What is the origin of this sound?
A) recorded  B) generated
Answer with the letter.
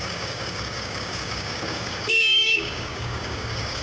B